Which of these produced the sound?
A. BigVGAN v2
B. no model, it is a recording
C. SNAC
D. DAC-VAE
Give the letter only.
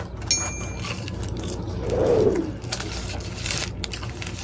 B